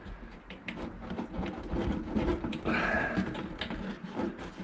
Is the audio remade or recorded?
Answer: recorded